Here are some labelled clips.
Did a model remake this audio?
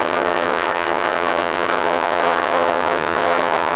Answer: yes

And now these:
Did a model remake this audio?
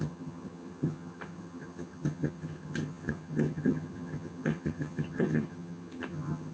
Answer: yes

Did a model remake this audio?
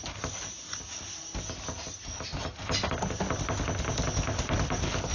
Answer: no